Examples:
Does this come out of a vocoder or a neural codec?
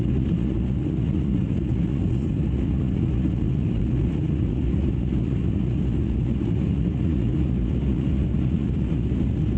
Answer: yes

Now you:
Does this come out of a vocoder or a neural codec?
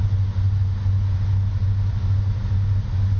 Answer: no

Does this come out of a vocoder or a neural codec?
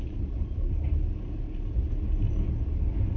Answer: no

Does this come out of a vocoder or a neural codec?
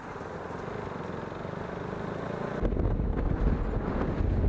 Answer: no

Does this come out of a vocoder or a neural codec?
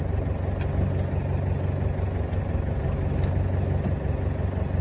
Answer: no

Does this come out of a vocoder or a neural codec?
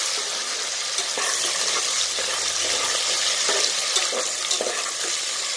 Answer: no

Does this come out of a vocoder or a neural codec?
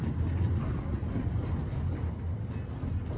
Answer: no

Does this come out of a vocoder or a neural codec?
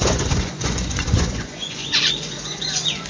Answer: yes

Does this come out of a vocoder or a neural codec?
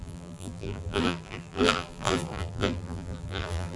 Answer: yes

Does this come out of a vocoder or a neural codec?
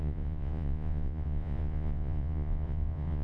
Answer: yes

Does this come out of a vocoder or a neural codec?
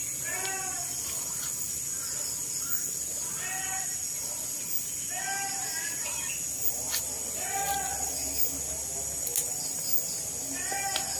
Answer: no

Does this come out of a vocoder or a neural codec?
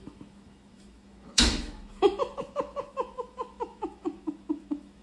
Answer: yes